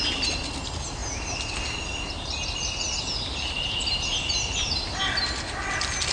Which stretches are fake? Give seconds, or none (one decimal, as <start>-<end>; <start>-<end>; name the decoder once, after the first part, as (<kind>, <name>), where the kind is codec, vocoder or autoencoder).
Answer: none